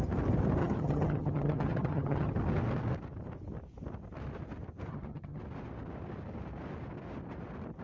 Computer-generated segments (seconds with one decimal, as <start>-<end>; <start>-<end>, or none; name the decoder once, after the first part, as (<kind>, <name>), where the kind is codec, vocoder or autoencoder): 0.6-2.3 (vocoder, HiFi-GAN); 4.9-5.4

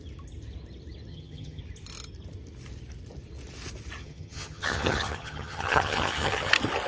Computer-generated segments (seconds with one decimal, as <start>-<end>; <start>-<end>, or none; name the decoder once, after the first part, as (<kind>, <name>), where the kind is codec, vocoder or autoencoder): 1.1-1.6 (vocoder, HiFi-GAN); 4.0-6.5

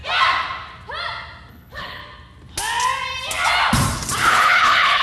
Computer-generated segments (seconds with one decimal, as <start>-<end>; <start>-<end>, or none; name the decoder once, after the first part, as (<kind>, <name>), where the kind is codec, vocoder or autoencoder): 1.5-2.0 (codec, HILCodec); 4.3-5.0

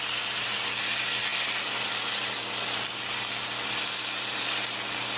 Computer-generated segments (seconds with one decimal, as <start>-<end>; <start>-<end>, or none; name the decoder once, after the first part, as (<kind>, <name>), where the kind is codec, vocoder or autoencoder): none

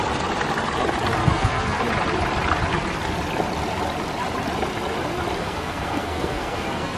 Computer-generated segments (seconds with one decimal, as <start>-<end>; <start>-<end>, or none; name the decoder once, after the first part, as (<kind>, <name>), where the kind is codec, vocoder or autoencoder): 1.2-1.8 (codec, SNAC); 5.4-7.0

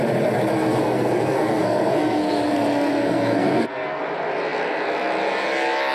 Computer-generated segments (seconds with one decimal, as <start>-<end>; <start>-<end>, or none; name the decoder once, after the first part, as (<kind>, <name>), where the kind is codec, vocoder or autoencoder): 0.5-4.0 (codec, SNAC)

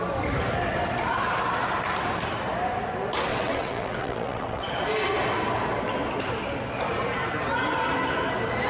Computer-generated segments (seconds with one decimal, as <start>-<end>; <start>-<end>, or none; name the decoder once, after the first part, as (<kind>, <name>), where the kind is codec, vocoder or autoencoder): 3.3-4.7 (vocoder, WaveNeXt)

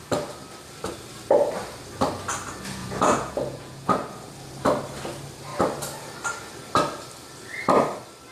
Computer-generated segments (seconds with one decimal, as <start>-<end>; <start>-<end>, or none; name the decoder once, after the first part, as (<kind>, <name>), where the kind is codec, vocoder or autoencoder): 2.8-4.3 (vocoder, Vocos)